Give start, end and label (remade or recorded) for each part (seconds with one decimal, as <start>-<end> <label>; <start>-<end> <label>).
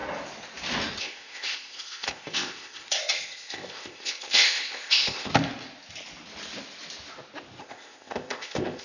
0.0-1.0 recorded; 1.0-5.3 remade; 5.3-7.6 recorded; 7.6-8.8 remade